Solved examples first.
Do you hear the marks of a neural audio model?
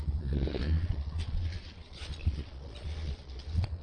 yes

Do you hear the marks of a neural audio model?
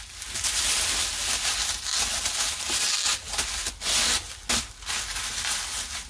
no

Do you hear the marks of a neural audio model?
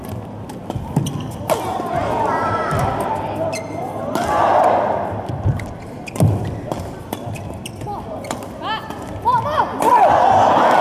no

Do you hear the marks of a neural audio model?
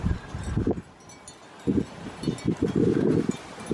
no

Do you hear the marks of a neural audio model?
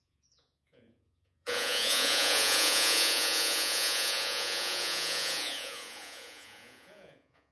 yes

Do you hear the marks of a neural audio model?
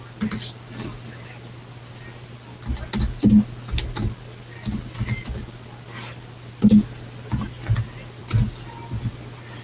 no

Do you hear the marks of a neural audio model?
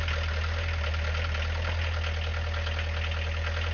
no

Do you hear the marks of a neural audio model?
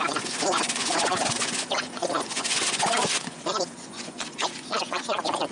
yes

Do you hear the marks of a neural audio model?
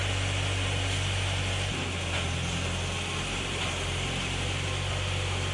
no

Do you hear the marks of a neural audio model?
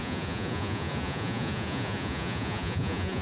yes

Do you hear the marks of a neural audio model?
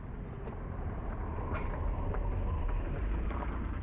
no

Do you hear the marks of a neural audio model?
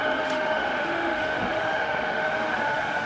yes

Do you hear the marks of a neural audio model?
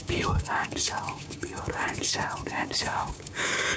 yes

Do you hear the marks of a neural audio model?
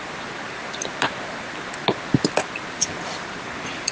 no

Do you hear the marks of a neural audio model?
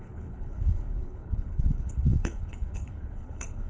yes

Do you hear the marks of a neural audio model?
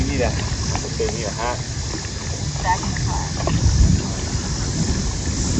no